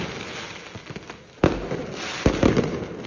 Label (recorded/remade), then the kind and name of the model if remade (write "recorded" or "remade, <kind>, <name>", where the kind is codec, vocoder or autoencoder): recorded